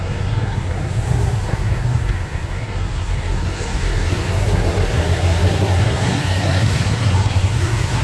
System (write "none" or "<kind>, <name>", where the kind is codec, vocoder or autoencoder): codec, SNAC